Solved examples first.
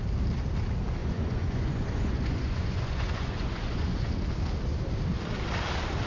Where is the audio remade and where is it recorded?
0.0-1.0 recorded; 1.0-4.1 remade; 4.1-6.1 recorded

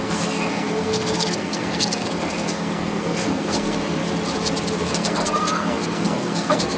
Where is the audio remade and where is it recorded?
0.0-4.0 remade; 4.0-4.8 recorded; 4.8-6.8 remade

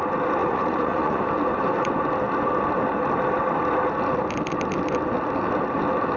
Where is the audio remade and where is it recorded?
0.0-0.4 recorded; 0.4-1.2 remade; 1.2-6.2 recorded

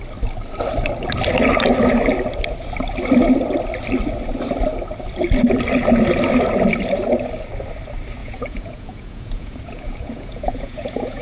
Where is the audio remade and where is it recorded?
0.0-8.2 recorded; 8.2-11.2 remade

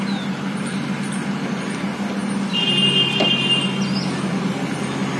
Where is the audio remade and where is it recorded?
0.0-5.2 recorded